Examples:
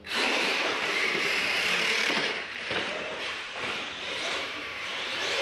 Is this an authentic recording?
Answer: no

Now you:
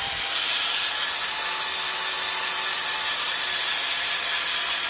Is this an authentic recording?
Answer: yes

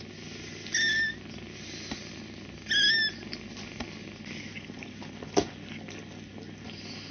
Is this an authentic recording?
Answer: yes